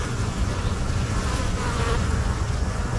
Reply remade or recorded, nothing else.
remade